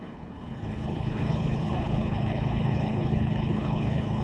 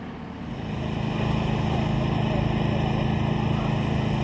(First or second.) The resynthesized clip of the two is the first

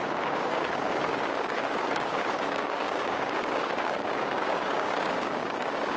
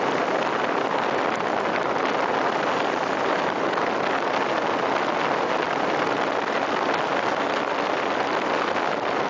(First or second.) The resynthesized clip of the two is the first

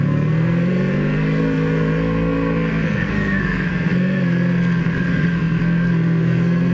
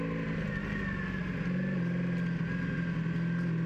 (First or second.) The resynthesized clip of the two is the first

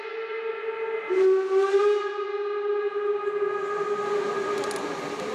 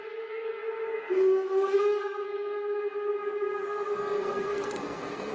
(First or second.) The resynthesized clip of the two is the second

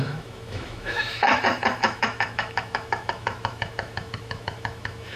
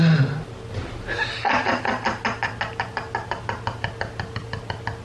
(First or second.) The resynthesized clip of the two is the first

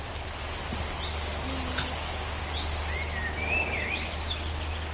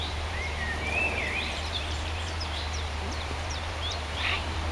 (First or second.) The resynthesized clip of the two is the second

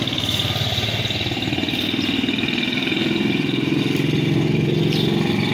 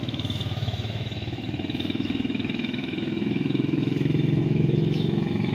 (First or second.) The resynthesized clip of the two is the second